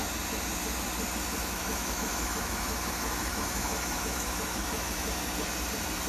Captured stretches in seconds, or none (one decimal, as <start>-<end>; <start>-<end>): 0.0-1.4; 5.1-6.1